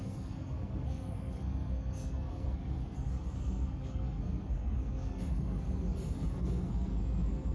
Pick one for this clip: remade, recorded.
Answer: remade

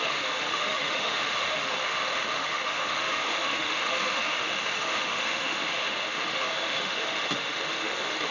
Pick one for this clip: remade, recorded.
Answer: remade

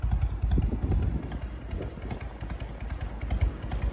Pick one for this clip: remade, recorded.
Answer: recorded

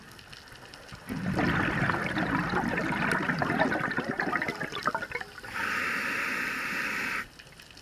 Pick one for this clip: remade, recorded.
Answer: recorded